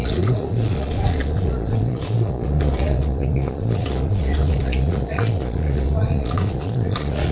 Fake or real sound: fake